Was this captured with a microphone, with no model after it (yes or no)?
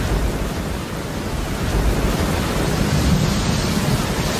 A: yes